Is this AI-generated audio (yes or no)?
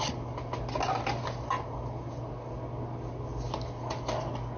no